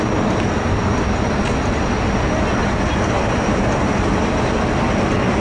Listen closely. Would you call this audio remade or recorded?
recorded